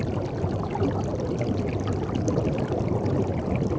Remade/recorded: recorded